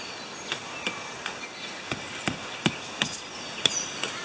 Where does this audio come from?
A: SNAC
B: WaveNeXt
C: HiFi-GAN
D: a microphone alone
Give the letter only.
D